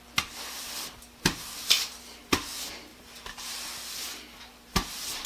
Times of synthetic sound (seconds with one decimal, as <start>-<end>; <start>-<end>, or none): 2.9-3.6; 4.5-5.3